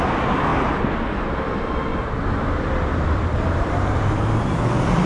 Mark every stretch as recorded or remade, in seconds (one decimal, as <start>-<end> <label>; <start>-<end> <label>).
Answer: 0.0-1.9 recorded; 1.9-5.1 remade